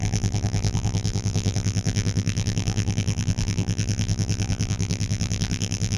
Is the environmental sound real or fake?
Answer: fake